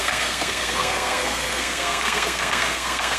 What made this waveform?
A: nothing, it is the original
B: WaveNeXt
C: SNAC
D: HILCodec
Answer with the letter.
C